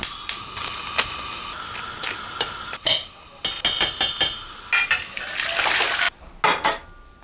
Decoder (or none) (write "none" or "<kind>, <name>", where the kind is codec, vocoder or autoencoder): none